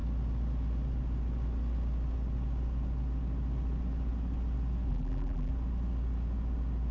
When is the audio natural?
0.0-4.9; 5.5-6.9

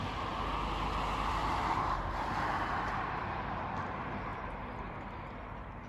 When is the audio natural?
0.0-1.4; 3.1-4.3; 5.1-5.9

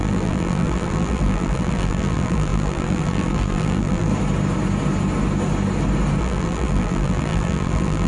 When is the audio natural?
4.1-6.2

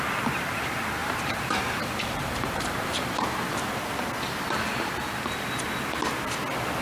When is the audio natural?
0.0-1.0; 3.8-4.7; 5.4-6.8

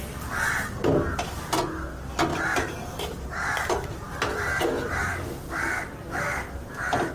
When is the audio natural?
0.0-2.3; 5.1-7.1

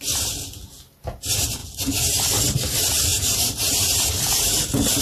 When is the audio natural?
0.0-3.1; 4.5-5.0